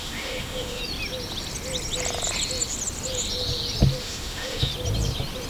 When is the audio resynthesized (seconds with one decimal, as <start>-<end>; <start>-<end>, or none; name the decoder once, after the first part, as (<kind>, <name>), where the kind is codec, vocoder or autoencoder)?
0.0-0.8 (autoencoder, DAC-VAE); 4.0-4.7